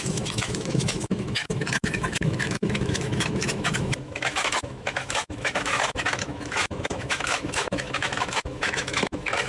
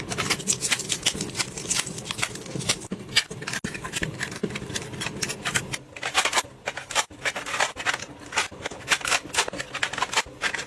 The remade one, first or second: first